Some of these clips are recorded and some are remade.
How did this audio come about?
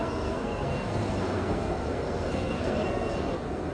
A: remade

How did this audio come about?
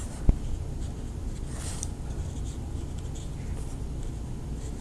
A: recorded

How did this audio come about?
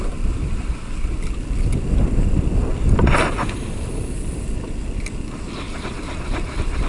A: recorded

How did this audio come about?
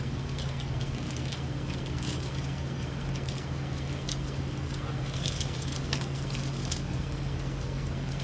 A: remade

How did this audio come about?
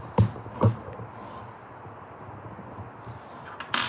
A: recorded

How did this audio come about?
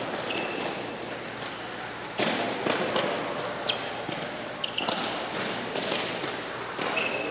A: recorded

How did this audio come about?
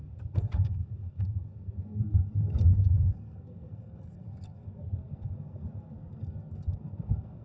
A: remade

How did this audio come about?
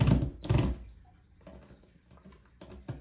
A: recorded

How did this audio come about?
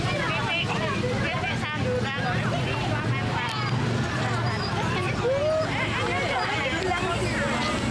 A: recorded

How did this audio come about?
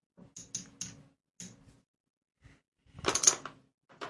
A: recorded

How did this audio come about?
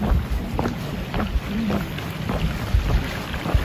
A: recorded